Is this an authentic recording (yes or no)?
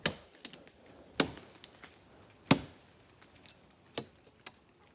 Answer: yes